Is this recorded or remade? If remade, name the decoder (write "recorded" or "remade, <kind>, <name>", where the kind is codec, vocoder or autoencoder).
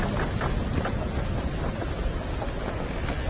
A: recorded